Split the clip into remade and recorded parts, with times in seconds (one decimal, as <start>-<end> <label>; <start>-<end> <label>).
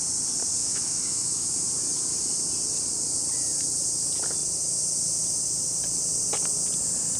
0.0-0.6 recorded; 0.6-1.5 remade; 1.5-7.2 recorded